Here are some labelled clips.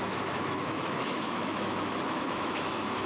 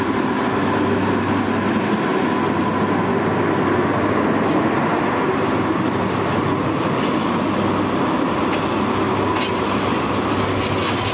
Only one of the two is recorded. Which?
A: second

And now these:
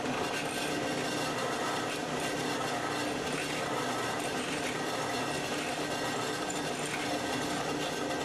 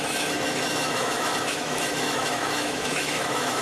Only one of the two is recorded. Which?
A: first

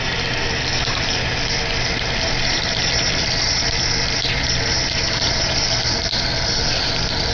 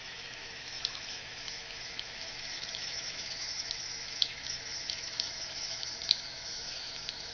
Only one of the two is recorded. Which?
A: first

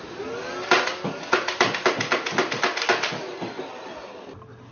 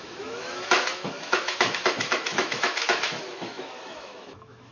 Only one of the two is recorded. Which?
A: first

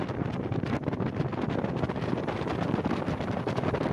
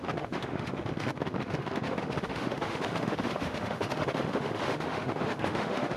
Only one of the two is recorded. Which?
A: first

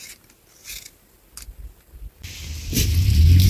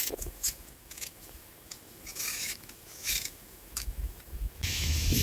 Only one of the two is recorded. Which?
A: first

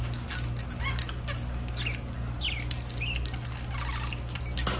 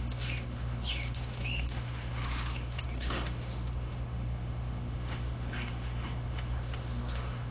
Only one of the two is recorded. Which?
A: first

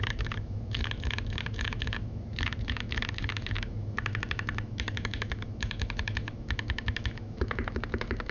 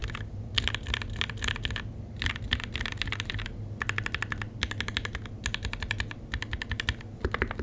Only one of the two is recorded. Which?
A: second